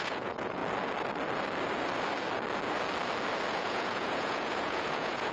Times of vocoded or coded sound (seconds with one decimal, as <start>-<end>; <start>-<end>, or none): 0.0-0.6; 3.5-5.3